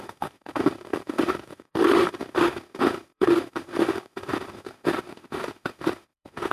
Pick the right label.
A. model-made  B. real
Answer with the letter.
A